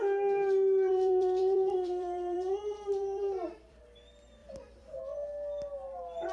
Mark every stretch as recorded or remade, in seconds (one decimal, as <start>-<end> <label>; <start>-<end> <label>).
0.0-0.9 recorded; 0.9-3.8 remade; 3.8-4.4 recorded; 4.4-5.0 remade; 5.0-6.3 recorded

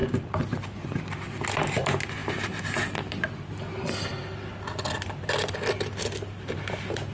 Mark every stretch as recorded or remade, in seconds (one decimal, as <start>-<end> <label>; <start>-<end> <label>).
0.0-7.1 recorded